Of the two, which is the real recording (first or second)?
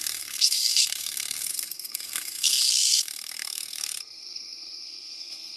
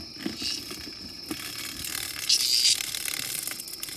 second